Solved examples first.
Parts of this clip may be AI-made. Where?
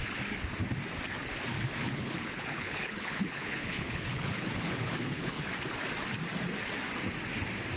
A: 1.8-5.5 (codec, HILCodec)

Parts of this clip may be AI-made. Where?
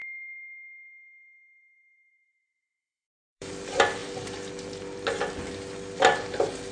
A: 0.0-3.5 (autoencoder, DAC-VAE)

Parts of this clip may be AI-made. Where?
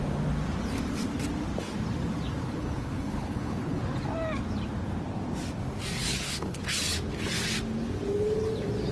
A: 2.4-3.8 (codec, HILCodec); 6.0-6.6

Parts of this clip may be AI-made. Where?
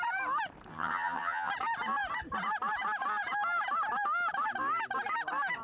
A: 0.7-1.5 (vocoder, HiFi-GAN)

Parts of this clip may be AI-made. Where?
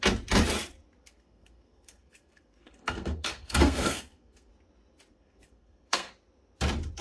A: 1.0-4.5 (codec, SNAC); 5.1-6.1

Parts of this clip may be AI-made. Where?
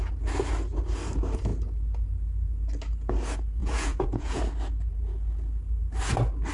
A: 3.6-4.4 (vocoder, Vocos)